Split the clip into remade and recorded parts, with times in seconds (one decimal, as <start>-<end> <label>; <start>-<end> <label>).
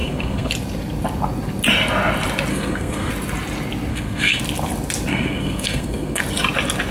0.0-0.5 remade; 0.5-2.5 recorded; 2.5-3.1 remade; 3.1-3.9 recorded; 3.9-4.4 remade; 4.4-5.1 recorded; 5.1-6.2 remade; 6.2-6.9 recorded